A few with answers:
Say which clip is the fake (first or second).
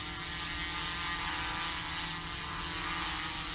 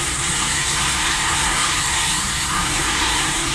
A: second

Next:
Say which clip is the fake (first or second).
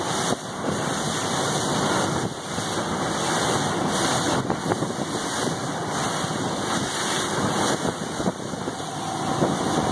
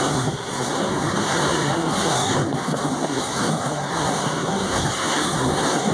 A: second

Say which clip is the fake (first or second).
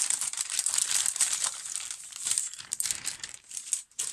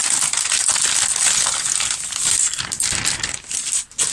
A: first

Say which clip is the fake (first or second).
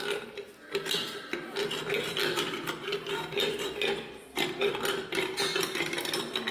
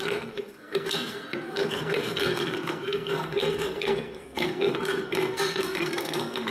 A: second